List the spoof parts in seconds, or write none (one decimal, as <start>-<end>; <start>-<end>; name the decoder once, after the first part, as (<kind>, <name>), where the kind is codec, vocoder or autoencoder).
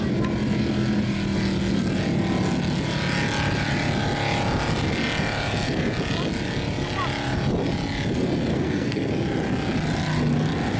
8.5-9.1 (codec, SNAC)